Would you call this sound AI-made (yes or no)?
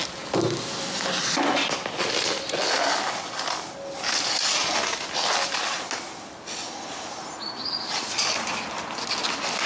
no